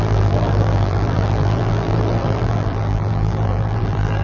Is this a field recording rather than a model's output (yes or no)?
no